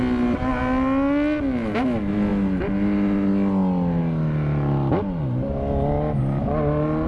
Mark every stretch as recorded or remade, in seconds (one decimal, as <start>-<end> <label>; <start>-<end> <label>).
0.0-7.1 recorded